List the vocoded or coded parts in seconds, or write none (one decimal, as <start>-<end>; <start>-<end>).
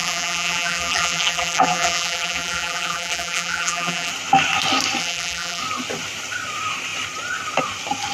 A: 0.0-4.1; 5.0-5.6